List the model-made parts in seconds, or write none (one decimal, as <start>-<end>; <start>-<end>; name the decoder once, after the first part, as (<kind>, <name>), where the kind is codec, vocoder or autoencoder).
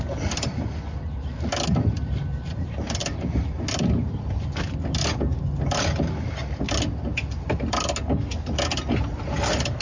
none